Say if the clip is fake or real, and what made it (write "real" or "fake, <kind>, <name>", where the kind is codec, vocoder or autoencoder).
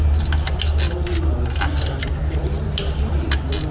real